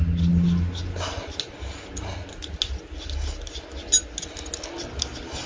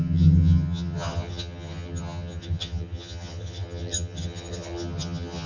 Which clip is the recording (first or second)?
first